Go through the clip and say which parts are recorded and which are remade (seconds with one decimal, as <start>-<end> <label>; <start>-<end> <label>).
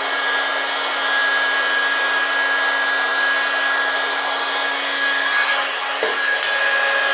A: 0.0-7.1 recorded